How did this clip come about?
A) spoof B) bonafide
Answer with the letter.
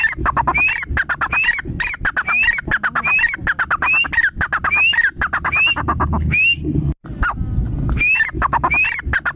B